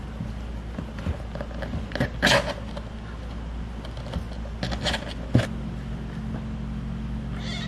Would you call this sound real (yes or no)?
yes